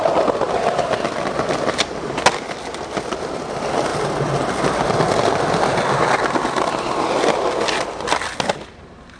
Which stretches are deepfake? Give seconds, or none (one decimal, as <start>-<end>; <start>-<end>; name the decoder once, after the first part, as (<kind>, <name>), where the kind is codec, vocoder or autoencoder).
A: none

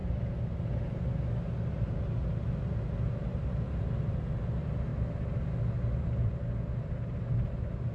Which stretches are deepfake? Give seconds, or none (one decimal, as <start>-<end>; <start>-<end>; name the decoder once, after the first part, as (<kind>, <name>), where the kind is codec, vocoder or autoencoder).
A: 0.0-1.1 (vocoder, BigVGAN v2); 3.2-3.9

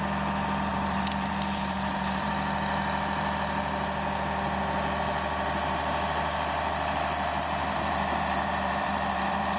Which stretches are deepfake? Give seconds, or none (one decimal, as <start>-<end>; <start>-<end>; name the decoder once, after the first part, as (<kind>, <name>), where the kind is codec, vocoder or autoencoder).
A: 0.7-2.3 (vocoder, BigVGAN v2); 7.6-9.6

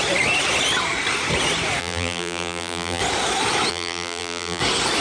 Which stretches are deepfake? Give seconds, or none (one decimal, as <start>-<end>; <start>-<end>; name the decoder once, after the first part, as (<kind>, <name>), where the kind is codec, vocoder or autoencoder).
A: 1.8-3.0 (vocoder, BigVGAN v2); 3.7-4.6

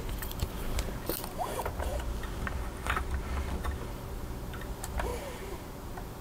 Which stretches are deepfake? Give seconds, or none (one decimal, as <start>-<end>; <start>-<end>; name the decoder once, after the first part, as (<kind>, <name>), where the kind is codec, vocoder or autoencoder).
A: 0.0-1.9 (vocoder, BigVGAN v2); 3.9-6.2

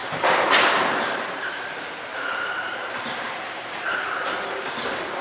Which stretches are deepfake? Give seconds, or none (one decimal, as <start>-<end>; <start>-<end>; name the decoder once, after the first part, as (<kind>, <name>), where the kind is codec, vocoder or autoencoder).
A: 0.0-1.3 (vocoder, BigVGAN v2); 2.1-4.3